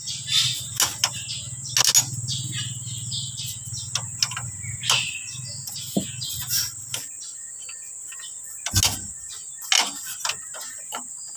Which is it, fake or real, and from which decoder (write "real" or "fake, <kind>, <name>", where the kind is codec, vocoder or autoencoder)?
real